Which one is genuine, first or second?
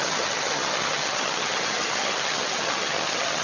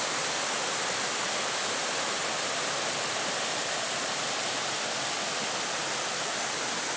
second